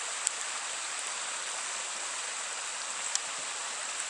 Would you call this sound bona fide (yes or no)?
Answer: yes